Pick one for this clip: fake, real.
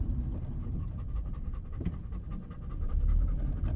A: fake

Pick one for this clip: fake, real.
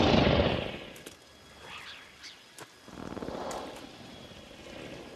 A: real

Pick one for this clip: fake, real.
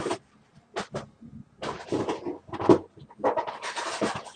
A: real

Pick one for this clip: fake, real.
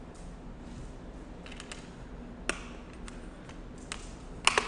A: real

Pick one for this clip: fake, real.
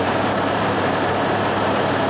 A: fake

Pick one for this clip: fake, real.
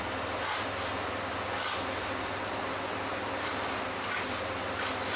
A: real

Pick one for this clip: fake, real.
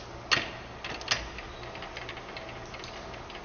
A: real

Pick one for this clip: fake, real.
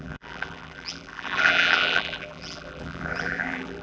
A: fake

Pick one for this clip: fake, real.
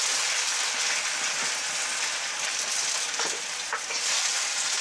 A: real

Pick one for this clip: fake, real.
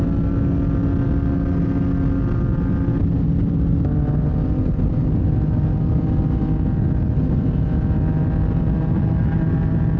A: real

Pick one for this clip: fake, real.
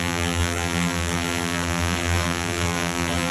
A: fake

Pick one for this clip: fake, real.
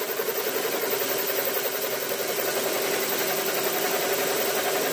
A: real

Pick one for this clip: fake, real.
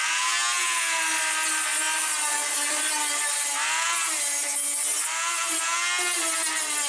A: real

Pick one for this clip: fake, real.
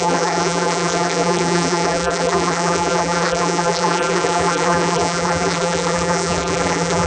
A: fake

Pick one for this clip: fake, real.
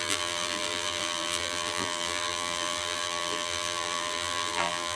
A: fake